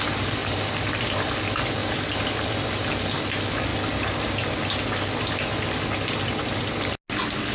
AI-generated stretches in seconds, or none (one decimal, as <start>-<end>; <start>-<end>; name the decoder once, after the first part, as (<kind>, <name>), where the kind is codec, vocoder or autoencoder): 0.4-1.4 (vocoder, BigVGAN v2); 1.8-2.9